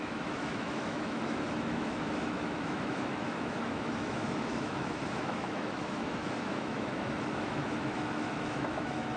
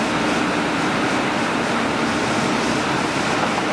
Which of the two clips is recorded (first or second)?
second